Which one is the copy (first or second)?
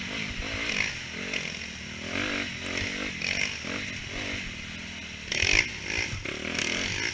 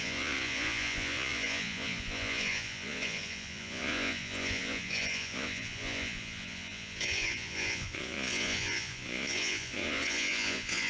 second